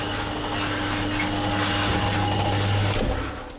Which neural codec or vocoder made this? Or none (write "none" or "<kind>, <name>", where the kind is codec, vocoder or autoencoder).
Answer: none